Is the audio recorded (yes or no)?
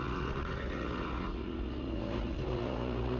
no